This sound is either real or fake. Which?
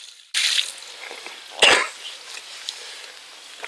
real